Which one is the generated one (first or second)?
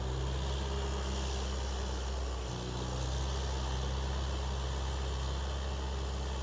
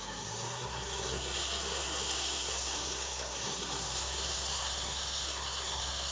second